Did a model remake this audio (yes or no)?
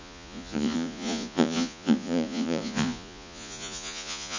yes